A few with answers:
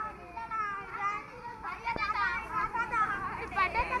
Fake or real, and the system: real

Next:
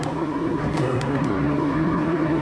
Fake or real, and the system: fake, codec, SNAC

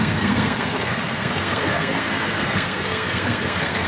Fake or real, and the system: fake, codec, SNAC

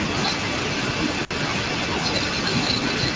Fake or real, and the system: real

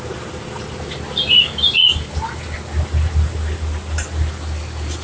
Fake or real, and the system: real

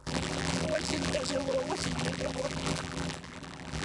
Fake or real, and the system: fake, vocoder, BigVGAN v2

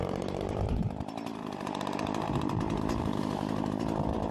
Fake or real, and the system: fake, vocoder, BigVGAN v2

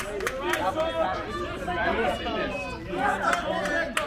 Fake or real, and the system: real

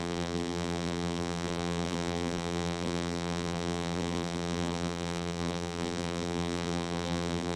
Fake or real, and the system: fake, vocoder, BigVGAN v2